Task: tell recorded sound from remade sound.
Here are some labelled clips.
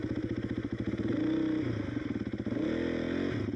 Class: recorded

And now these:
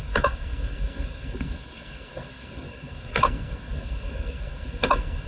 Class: remade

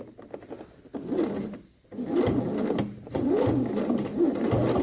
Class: recorded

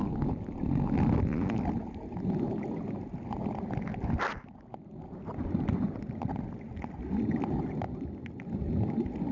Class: recorded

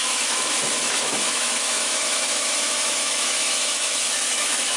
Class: remade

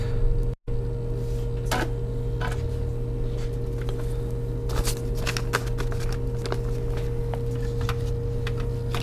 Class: recorded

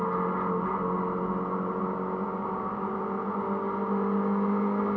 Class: recorded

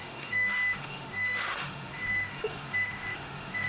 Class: remade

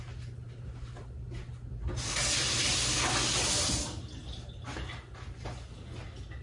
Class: recorded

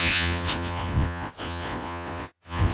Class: remade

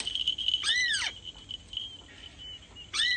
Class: recorded